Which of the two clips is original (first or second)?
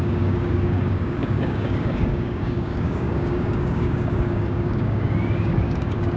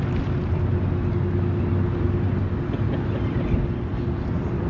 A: second